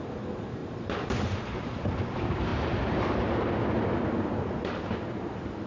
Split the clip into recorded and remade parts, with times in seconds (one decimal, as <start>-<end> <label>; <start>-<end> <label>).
0.0-2.5 remade; 2.5-5.7 recorded